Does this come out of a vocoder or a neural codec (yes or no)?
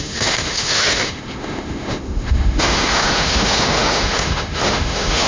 yes